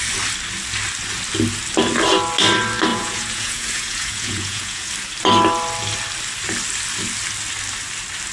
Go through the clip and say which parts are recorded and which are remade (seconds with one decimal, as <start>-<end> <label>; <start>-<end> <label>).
0.0-2.9 recorded; 2.9-4.9 remade; 4.9-8.3 recorded